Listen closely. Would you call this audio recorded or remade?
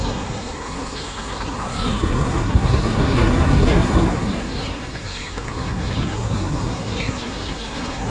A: remade